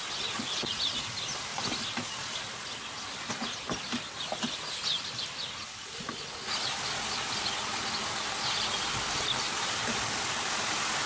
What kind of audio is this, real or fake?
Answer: real